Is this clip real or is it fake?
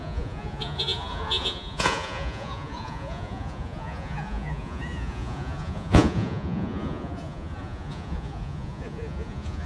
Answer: fake